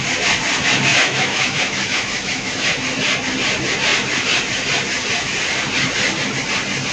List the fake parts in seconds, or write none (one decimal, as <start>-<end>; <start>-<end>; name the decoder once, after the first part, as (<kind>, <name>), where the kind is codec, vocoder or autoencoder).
0.9-2.5 (autoencoder, DAC-VAE)